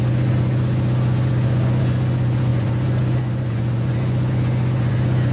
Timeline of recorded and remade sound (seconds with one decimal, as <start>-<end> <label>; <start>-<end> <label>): 0.0-5.3 remade